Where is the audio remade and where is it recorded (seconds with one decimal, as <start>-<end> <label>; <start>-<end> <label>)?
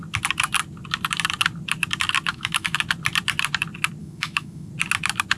0.0-2.3 recorded; 2.3-2.8 remade; 2.8-4.0 recorded; 4.0-4.7 remade; 4.7-5.4 recorded